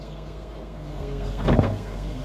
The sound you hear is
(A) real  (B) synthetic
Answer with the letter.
B